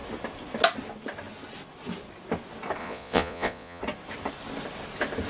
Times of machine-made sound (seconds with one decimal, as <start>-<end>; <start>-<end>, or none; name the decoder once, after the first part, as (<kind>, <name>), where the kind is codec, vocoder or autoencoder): 2.8-3.8 (vocoder, Vocos)